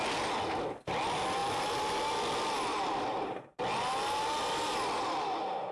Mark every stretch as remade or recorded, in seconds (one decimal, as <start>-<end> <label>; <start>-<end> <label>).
0.0-5.7 recorded